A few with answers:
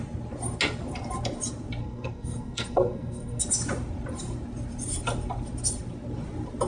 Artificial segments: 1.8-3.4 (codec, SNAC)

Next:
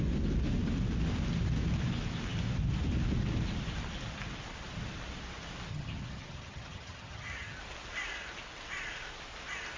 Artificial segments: 5.7-7.6 (vocoder, HiFi-GAN)

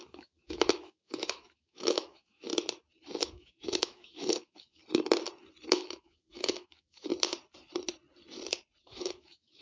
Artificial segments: 0.0-2.5 (autoencoder, DAC-VAE); 3.2-4.8; 5.7-7.1; 8.8-9.6

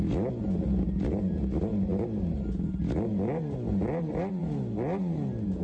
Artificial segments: none

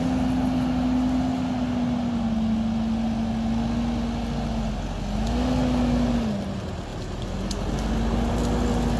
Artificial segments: none

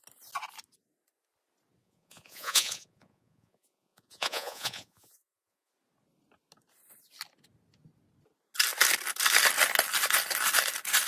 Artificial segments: 1.8-5.7 (vocoder, Vocos)

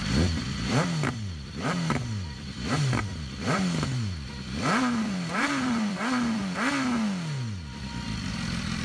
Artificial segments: 0.0-6.4 (vocoder, BigVGAN v2); 8.3-8.8

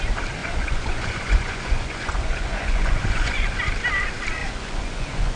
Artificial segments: 0.4-3.6 (vocoder, Vocos); 4.4-5.4